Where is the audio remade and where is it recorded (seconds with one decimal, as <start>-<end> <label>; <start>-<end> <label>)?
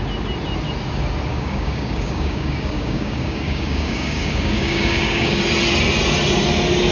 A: 0.0-1.3 recorded; 1.3-5.4 remade; 5.4-6.9 recorded